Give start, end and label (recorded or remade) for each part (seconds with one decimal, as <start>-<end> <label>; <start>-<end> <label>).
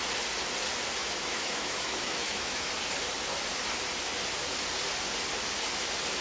0.0-1.0 recorded; 1.0-2.7 remade; 2.7-6.2 recorded